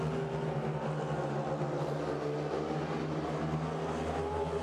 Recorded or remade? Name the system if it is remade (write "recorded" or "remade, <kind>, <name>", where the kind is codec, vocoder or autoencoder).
recorded